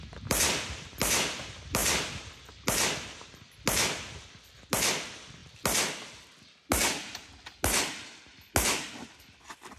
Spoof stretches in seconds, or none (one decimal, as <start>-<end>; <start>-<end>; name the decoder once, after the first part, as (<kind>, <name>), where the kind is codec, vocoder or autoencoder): none